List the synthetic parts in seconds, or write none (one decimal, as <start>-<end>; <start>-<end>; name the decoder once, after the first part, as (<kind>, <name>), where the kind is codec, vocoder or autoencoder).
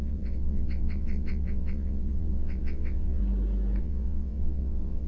0.0-3.2 (vocoder, WaveNeXt); 3.8-5.1